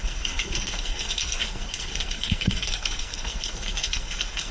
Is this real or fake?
fake